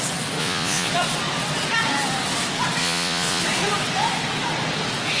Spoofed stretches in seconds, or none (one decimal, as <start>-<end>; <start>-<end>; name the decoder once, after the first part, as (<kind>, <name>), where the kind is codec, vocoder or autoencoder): 0.4-0.9 (vocoder, Vocos); 2.8-3.4